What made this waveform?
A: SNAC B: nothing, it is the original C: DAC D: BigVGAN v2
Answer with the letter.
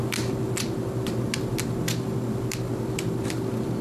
B